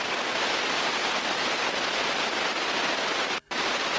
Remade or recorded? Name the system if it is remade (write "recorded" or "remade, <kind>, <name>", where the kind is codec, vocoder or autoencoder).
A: recorded